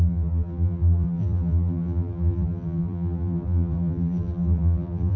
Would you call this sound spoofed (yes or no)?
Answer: yes